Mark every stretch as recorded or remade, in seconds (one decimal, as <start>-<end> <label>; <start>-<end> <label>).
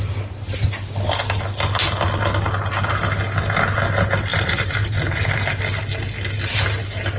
0.0-4.3 recorded; 4.3-5.6 remade; 5.6-7.2 recorded